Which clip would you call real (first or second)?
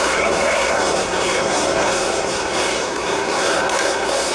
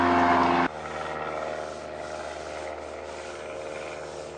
second